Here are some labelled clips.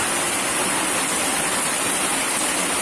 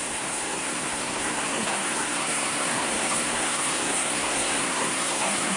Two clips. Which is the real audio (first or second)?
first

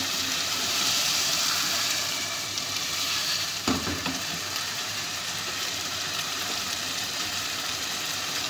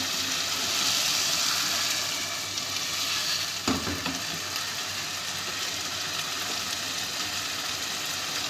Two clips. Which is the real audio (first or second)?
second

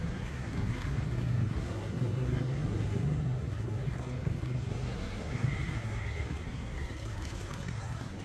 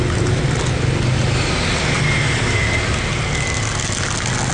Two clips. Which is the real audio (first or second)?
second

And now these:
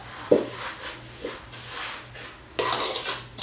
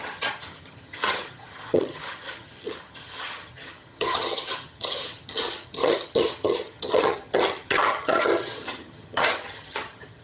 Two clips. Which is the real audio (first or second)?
first